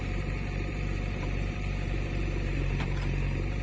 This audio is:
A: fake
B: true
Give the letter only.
A